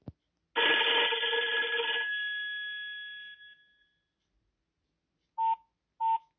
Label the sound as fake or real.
real